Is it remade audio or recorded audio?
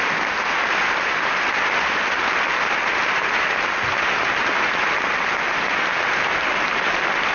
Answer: recorded